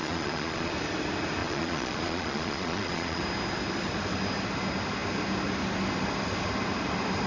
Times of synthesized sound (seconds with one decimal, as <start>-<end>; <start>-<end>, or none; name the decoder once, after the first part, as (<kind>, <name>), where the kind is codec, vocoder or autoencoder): 0.0-0.7 (vocoder, Vocos); 1.4-3.2